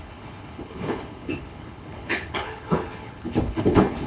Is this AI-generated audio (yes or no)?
yes